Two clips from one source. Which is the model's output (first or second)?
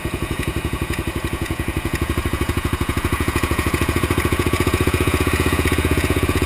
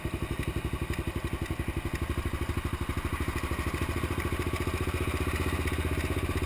first